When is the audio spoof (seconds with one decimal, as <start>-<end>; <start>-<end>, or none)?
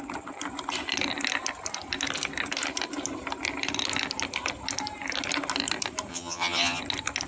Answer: 6.1-6.8